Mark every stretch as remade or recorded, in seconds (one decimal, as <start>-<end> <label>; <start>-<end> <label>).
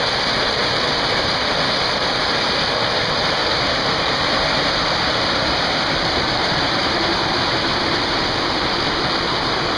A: 0.0-0.6 recorded; 0.6-1.4 remade; 1.4-3.4 recorded; 3.4-7.7 remade; 7.7-9.8 recorded